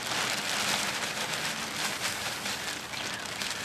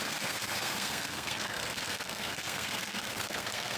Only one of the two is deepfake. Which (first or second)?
second